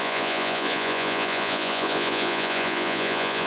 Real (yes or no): no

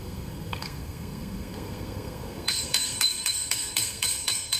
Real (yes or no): no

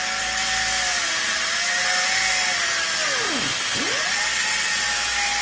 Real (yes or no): yes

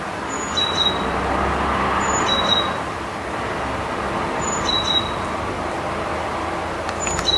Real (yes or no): yes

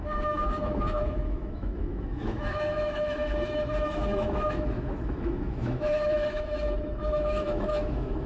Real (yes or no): no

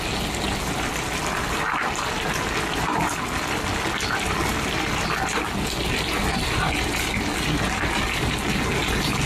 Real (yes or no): yes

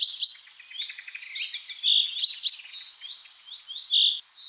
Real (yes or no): yes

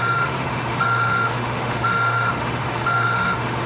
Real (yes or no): no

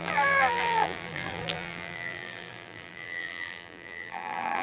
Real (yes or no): no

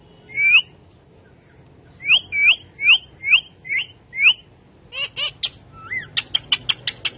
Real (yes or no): yes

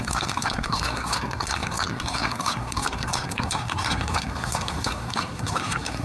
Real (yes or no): no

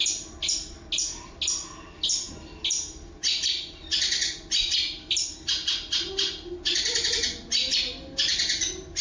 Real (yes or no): yes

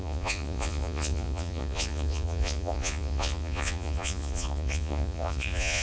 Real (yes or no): no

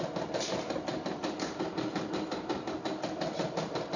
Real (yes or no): yes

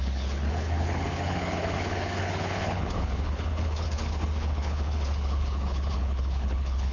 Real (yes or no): no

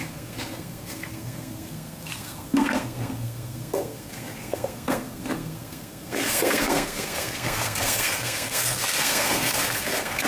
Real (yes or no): no